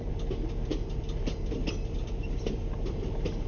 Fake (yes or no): no